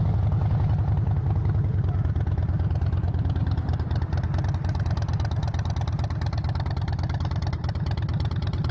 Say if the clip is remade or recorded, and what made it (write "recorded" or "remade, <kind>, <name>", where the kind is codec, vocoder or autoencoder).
recorded